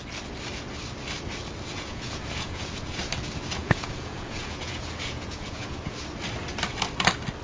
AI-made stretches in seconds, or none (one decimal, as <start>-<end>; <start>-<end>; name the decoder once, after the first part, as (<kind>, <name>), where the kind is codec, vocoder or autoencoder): 1.7-3.0 (vocoder, Vocos); 3.6-5.9